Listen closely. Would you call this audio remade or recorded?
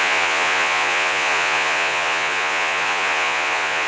remade